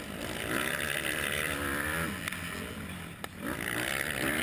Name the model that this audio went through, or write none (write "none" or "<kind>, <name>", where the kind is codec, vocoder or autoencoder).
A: none